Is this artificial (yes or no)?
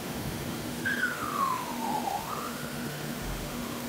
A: yes